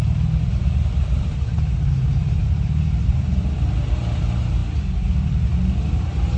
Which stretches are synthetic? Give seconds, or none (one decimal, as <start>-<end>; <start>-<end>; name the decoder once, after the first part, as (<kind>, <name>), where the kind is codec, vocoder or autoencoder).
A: 0.0-2.4 (vocoder, BigVGAN v2); 3.1-4.6; 6.0-6.4